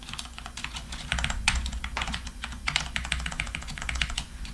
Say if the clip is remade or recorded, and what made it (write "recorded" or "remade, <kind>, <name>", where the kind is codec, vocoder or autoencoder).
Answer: remade, vocoder, Vocos